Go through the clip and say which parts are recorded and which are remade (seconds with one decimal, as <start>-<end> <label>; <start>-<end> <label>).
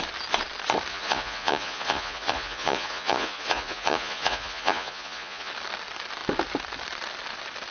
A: 0.0-0.9 recorded; 0.9-5.5 remade; 5.5-7.7 recorded